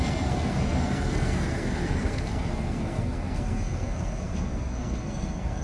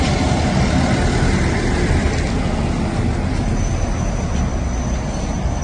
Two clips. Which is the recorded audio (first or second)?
second